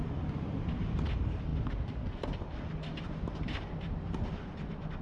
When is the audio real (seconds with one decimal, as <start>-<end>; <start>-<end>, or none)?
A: 0.0-5.0